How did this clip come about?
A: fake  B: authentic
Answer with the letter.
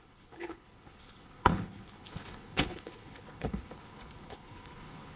A